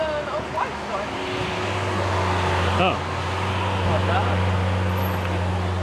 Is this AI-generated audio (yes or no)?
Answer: no